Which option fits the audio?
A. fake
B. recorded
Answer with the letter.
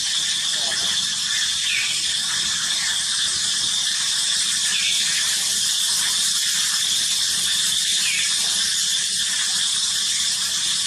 B